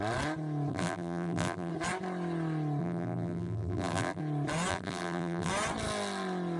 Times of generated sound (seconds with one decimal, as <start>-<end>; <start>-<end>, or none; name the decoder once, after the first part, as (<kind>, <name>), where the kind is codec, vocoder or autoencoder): 0.7-1.7 (vocoder, BigVGAN v2); 2.8-4.2; 4.7-5.5